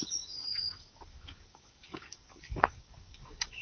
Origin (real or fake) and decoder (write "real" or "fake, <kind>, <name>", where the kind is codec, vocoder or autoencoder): fake, codec, DAC